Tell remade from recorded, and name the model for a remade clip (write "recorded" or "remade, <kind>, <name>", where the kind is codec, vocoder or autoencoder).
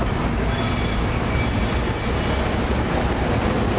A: recorded